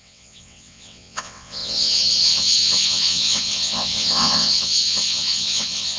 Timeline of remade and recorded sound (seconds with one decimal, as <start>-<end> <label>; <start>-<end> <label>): 0.0-6.0 remade